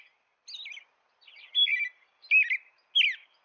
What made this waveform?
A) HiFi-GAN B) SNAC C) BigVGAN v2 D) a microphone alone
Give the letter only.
D